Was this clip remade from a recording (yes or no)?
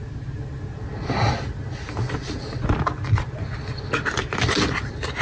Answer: no